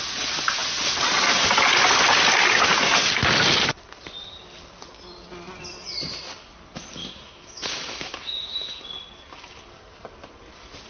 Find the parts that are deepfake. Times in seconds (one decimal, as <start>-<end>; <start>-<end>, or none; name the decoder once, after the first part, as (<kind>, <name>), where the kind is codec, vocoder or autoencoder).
7.0-8.8 (autoencoder, DAC-VAE)